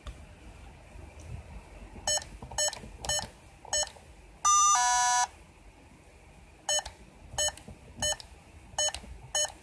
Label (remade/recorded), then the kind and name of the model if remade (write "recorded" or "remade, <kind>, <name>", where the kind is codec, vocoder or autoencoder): recorded